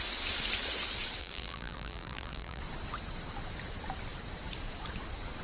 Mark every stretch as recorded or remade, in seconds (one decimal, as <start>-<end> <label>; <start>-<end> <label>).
0.0-1.2 recorded; 1.2-2.6 remade; 2.6-5.4 recorded